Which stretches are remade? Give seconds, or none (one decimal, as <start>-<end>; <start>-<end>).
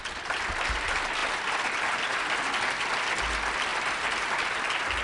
3.7-4.6